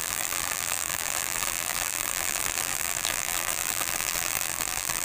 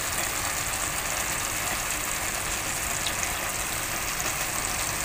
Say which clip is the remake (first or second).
first